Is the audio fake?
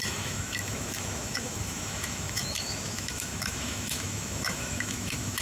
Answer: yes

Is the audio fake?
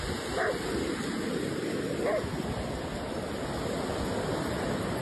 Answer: no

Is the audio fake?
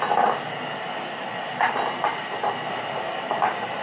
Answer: no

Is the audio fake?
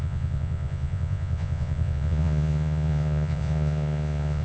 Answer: yes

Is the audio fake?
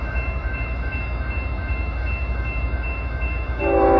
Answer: yes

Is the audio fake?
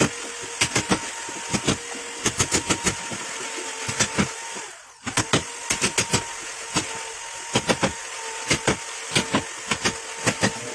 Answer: no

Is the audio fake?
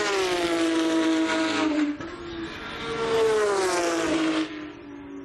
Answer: no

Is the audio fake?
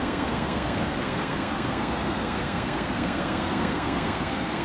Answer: yes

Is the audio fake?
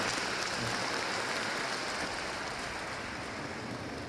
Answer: no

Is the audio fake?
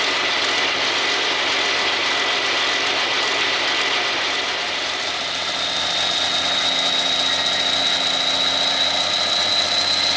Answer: no